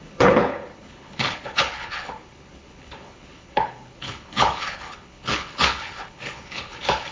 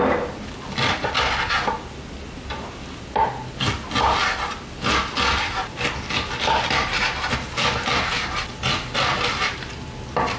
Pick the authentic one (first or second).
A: second